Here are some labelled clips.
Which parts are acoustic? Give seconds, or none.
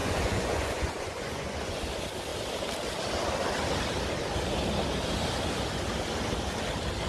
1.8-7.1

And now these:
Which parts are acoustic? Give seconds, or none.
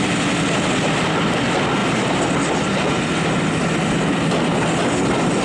0.0-5.4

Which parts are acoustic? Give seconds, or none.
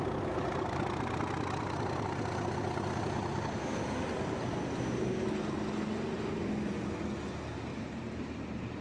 0.0-7.7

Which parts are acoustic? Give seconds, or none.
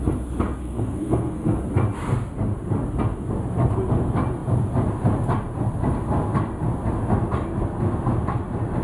0.0-0.6; 1.5-8.8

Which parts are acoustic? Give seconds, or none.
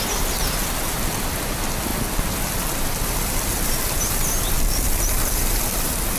0.0-6.2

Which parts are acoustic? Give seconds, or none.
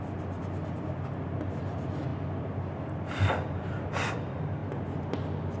0.0-5.6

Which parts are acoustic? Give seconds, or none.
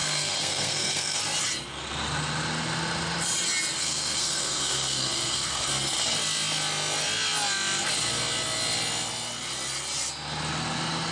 1.2-3.8; 5.7-11.1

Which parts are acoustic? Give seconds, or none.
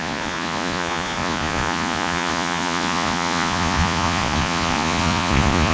none